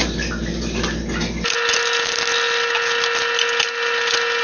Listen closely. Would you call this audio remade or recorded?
recorded